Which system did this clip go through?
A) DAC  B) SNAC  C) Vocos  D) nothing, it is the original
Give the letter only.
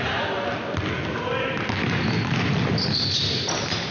D